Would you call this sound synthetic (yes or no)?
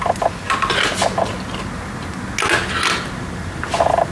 no